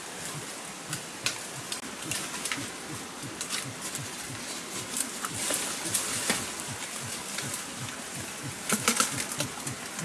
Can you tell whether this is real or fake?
real